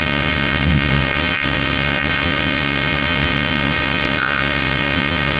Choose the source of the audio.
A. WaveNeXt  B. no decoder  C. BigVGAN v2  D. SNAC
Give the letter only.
A